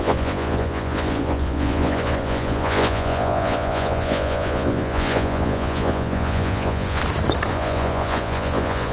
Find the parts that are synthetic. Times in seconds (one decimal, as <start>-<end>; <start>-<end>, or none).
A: 0.0-7.0; 7.5-8.9